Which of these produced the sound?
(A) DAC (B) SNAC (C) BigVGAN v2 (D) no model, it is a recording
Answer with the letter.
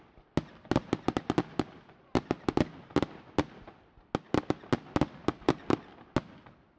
D